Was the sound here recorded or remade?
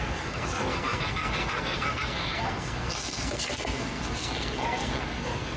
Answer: remade